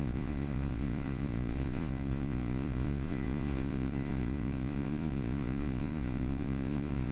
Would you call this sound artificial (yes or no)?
yes